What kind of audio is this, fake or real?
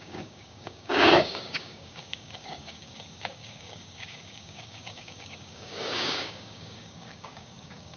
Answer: fake